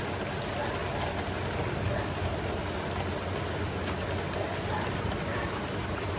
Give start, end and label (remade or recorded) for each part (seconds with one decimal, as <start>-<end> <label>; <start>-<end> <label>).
0.0-6.2 recorded